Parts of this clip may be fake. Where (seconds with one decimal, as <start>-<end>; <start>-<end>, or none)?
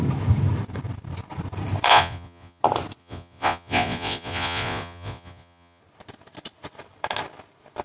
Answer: 1.9-2.6; 3.0-5.8